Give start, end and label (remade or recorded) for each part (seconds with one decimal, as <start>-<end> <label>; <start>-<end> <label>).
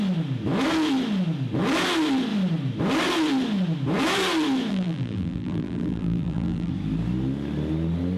0.0-4.7 recorded; 4.7-6.7 remade; 6.7-8.2 recorded